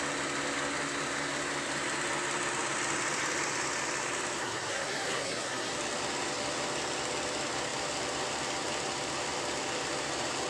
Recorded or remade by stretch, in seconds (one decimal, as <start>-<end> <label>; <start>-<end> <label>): 0.0-4.4 recorded; 4.4-5.7 remade; 5.7-10.5 recorded